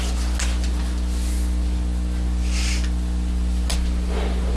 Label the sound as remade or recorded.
recorded